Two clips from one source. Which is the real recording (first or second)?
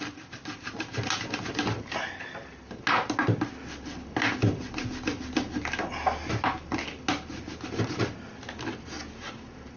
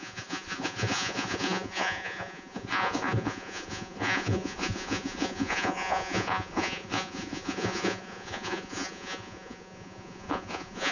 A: first